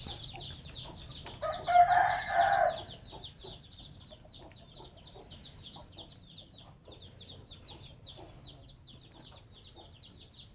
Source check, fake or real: real